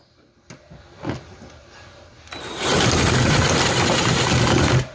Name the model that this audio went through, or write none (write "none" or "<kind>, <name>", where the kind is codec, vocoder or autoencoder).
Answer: none